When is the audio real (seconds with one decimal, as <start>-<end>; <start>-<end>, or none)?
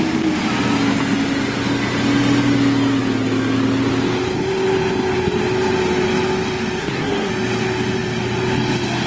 0.0-6.8; 7.3-9.1